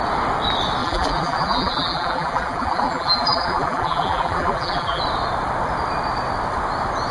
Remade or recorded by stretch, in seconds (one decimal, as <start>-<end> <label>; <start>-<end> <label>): 0.0-0.8 recorded; 0.8-5.0 remade; 5.0-7.1 recorded